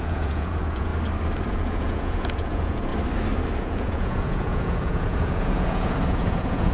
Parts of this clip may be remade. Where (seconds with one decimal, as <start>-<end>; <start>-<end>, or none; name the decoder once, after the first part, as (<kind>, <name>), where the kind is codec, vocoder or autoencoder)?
0.0-0.9 (vocoder, Vocos); 1.5-2.9; 3.6-6.7